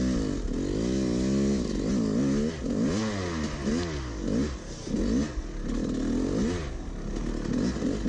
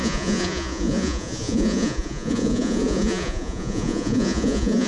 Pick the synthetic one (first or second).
second